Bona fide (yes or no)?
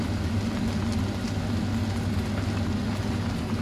yes